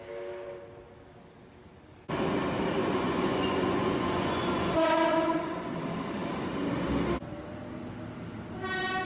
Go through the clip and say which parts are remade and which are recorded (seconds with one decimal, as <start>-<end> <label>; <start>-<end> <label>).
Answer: 0.0-2.8 recorded; 2.8-5.7 remade; 5.7-9.1 recorded